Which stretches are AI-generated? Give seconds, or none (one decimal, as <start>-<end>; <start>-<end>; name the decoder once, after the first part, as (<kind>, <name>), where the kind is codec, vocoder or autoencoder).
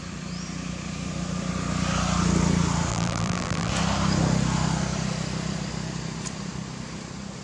2.9-3.7 (vocoder, BigVGAN v2)